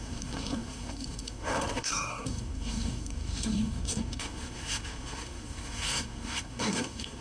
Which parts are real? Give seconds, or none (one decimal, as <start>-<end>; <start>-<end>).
none